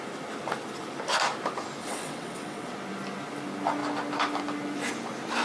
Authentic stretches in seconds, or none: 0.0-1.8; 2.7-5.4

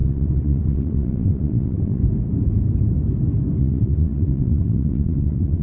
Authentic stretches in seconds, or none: 2.0-3.6

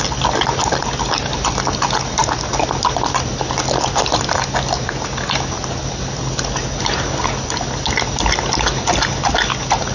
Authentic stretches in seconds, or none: 0.0-9.9